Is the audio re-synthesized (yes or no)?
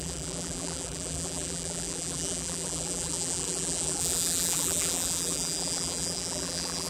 yes